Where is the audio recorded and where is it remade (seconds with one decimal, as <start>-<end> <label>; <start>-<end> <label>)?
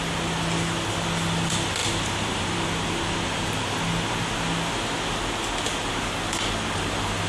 0.0-1.8 recorded; 1.8-3.6 remade; 3.6-7.3 recorded